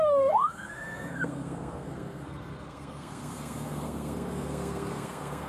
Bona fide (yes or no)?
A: no